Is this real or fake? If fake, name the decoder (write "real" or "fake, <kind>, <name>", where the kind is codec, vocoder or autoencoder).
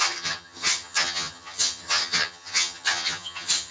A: fake, vocoder, HiFi-GAN